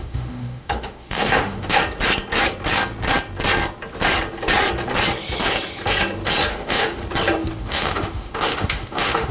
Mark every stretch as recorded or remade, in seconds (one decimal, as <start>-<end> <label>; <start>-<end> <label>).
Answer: 0.0-1.8 remade; 1.8-6.5 recorded; 6.5-7.0 remade; 7.0-7.6 recorded; 7.6-9.3 remade